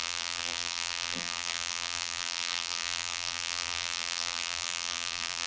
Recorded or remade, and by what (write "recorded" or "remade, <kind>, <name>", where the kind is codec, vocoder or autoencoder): remade, vocoder, BigVGAN v2